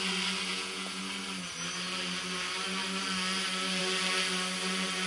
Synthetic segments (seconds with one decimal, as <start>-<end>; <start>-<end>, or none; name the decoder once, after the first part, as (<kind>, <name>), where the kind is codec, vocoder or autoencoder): 0.5-1.0 (vocoder, Vocos)

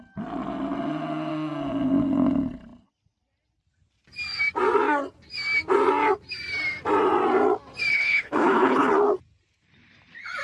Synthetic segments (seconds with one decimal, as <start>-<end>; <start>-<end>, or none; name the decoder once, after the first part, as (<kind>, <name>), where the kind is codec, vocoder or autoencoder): 7.9-8.9 (codec, HILCodec)